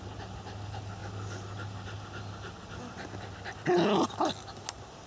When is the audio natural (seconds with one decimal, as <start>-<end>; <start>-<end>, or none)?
0.0-5.1